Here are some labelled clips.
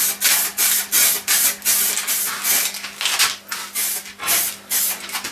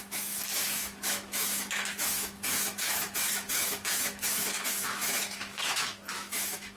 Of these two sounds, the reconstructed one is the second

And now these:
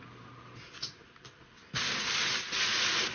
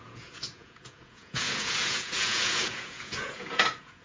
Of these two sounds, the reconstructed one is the second